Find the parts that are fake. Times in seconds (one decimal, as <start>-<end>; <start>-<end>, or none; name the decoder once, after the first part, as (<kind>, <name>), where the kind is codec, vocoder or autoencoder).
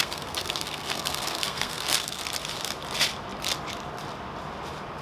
0.0-2.2 (codec, SNAC)